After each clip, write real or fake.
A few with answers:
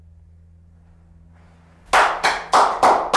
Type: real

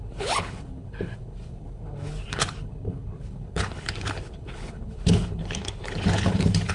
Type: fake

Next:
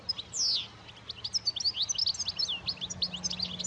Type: real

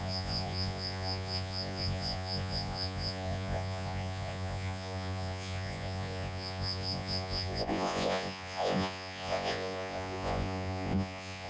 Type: fake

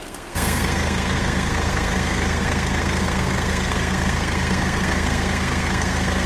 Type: fake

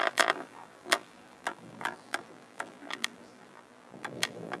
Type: fake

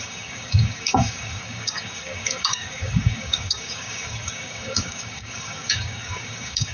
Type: fake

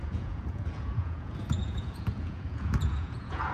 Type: fake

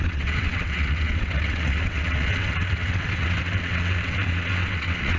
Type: fake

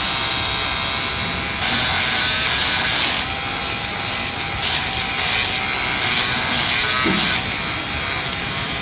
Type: real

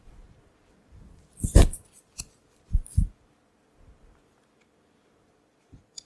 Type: fake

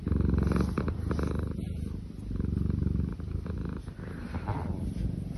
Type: real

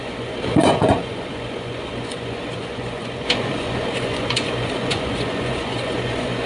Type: fake